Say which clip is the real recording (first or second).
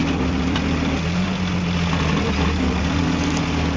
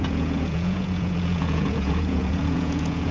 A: first